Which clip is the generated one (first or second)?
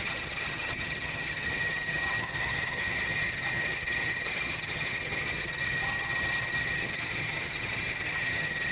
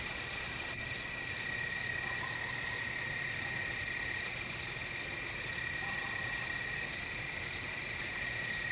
first